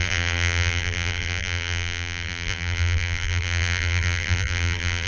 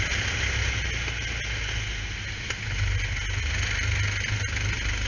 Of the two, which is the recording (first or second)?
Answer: second